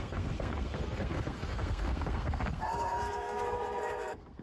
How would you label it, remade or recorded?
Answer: remade